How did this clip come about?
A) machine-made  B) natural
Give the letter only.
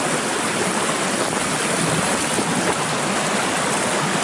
B